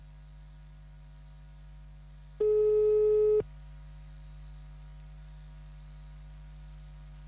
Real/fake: real